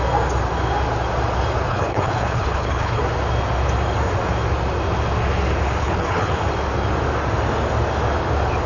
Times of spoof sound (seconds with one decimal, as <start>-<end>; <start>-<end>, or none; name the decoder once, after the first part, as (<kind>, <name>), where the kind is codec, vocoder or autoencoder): 1.7-3.0 (codec, HILCodec); 5.8-6.4